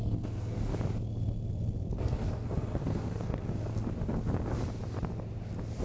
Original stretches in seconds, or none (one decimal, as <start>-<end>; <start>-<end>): 0.7-2.0; 3.7-5.8